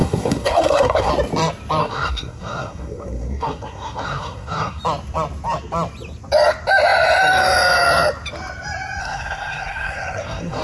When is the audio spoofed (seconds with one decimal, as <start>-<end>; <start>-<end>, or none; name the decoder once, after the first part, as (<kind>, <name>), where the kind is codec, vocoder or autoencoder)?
0.0-1.1 (codec, SNAC); 1.8-4.8; 9.0-10.6